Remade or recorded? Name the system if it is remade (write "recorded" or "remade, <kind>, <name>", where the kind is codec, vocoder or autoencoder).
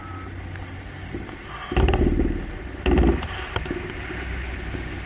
recorded